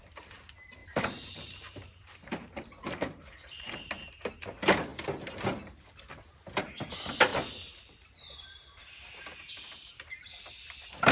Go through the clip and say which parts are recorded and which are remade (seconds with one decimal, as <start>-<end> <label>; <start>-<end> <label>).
0.0-0.8 recorded; 0.8-4.3 remade; 4.3-7.3 recorded; 7.3-8.1 remade; 8.1-8.8 recorded; 8.8-10.4 remade; 10.4-11.1 recorded